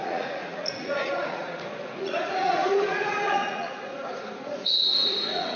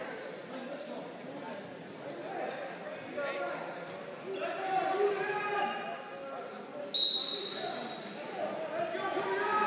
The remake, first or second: first